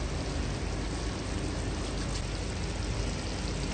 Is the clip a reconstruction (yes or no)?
no